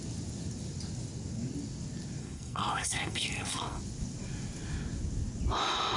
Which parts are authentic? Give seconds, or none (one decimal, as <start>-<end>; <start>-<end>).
0.0-2.2; 3.8-6.0